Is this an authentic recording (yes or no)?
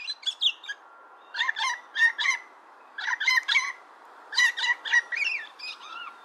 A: yes